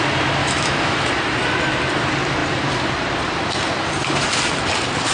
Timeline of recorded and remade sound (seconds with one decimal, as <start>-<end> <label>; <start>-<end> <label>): 0.0-0.4 recorded; 0.4-1.1 remade; 1.1-5.1 recorded